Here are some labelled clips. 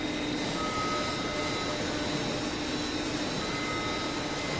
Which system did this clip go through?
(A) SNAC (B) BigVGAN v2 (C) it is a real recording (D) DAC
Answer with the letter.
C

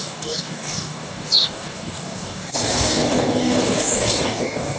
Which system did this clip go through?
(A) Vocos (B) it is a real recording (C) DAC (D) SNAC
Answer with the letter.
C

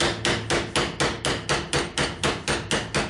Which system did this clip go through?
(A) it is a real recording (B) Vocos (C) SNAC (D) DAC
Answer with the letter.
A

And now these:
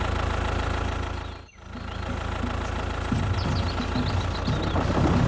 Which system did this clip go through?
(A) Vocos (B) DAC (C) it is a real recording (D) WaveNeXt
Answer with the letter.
C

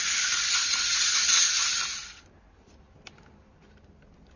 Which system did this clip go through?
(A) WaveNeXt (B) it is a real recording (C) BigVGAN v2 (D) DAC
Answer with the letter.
B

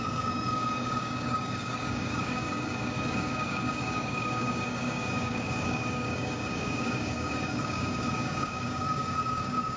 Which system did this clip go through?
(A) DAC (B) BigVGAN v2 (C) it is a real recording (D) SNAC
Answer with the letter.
A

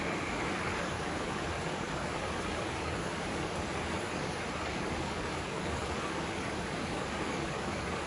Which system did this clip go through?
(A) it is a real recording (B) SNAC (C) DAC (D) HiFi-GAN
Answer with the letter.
C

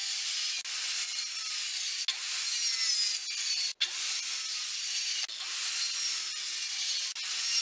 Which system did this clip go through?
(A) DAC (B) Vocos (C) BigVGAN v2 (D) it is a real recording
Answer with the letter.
D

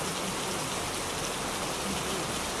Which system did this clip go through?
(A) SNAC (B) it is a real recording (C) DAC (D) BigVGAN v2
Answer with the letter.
B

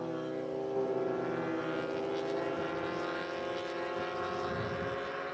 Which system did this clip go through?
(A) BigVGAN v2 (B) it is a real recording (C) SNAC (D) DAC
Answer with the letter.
B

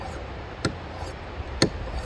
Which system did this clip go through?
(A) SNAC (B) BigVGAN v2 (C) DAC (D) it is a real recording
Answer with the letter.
D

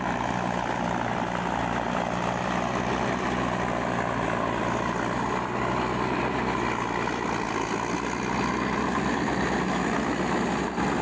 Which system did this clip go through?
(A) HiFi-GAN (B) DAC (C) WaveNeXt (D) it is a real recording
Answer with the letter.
D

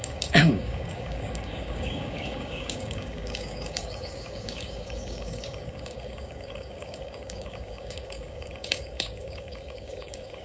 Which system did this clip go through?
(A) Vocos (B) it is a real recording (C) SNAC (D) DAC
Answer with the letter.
D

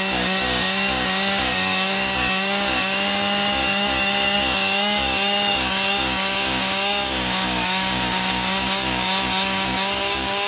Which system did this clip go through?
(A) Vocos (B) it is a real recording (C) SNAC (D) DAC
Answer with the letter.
D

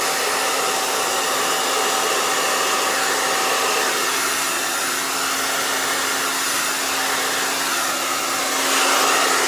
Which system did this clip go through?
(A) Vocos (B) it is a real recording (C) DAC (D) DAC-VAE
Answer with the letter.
B